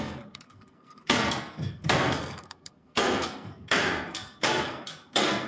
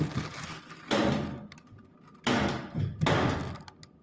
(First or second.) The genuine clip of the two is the second